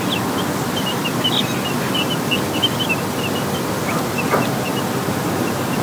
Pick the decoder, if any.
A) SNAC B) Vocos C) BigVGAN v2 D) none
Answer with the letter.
D